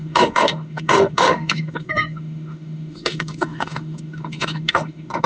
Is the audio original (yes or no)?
no